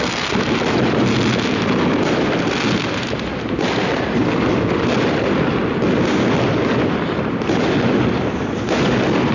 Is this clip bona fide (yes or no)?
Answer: yes